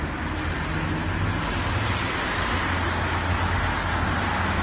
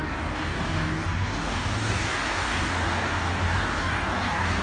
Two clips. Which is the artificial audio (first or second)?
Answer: second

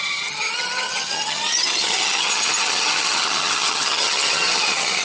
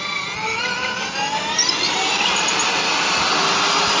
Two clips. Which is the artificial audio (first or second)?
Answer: first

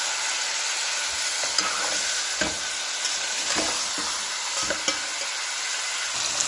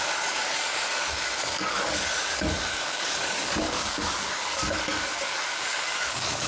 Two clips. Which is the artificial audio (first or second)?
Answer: second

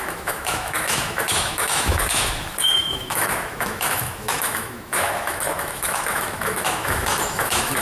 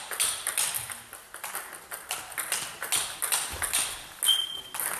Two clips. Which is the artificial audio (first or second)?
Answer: first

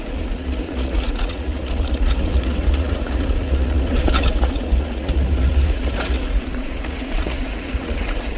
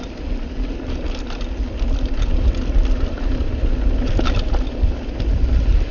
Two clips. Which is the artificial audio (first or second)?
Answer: first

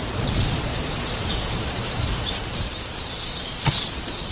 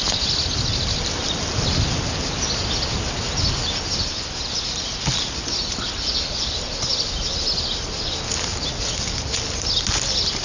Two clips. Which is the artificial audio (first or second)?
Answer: first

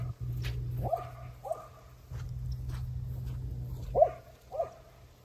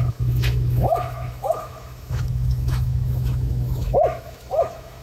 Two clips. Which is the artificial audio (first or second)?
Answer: second